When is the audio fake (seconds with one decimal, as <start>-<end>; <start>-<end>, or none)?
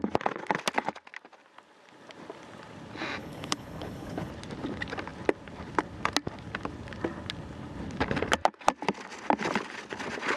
3.2-4.3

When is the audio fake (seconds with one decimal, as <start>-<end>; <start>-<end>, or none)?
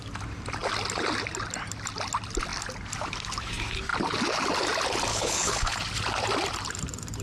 5.1-5.8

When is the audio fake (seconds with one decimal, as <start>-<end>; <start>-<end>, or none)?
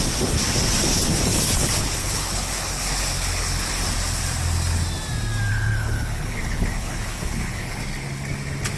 1.3-3.8; 5.5-7.8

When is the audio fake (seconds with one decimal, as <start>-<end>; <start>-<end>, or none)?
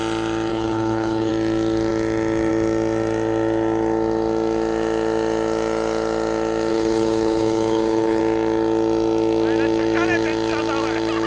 0.5-1.3; 6.7-8.2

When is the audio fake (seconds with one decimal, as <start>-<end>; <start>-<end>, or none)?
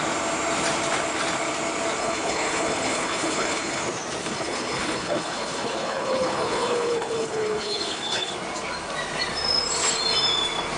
2.0-3.8; 4.2-8.3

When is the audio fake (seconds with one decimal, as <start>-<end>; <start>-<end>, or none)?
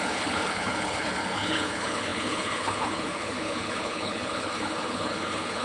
0.0-5.6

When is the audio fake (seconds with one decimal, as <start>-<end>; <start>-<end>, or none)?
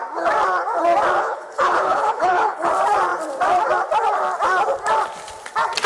1.2-2.7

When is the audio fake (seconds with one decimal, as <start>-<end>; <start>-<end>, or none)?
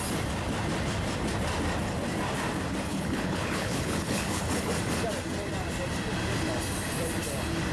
2.9-4.4